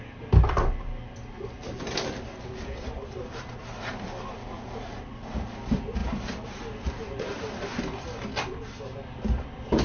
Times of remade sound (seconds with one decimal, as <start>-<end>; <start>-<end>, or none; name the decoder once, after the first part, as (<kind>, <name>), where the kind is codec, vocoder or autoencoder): none